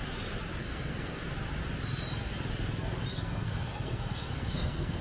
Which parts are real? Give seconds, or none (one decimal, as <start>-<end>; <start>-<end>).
0.0-0.6; 1.2-3.1